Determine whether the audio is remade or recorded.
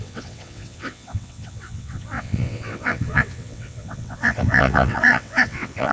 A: remade